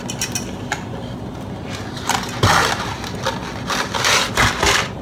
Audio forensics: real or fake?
real